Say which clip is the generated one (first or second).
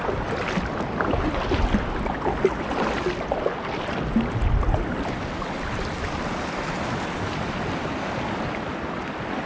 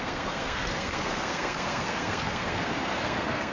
second